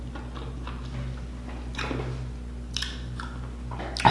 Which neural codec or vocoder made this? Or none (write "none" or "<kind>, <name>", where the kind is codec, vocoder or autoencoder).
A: none